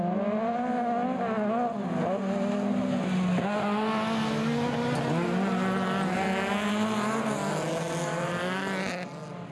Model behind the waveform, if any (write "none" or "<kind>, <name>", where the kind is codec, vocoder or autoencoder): none